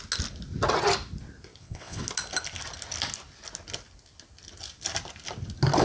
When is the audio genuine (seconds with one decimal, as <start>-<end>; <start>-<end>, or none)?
0.0-1.6; 2.0-5.8